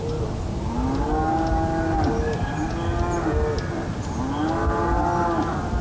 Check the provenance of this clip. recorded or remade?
recorded